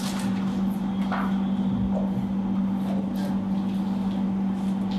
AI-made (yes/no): no